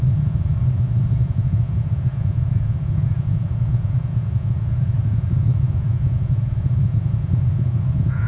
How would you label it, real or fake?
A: fake